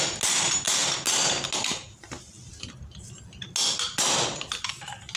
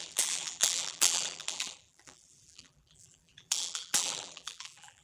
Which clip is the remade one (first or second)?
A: second